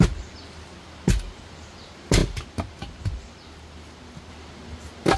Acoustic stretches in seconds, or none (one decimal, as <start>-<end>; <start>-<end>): 0.0-5.2